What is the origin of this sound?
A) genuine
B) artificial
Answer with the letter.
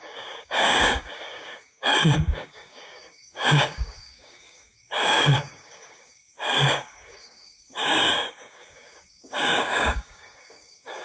B